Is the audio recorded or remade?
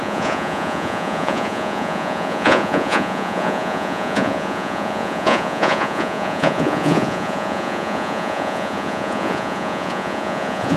remade